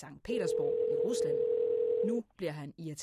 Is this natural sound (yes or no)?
yes